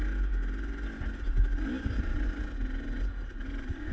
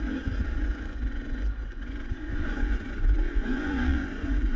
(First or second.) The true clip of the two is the first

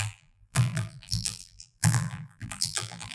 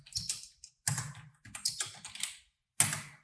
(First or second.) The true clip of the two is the second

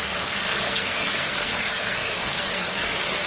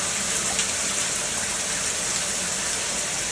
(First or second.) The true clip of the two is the second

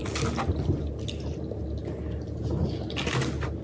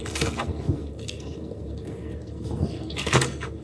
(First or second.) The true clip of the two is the first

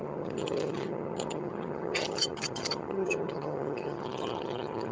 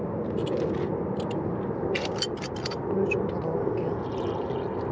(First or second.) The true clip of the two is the second